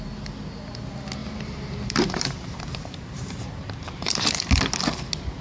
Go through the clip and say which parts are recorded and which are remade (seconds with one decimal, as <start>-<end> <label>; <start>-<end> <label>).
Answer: 0.0-1.2 recorded; 1.2-4.4 remade; 4.4-5.4 recorded